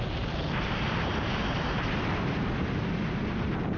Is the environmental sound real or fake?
real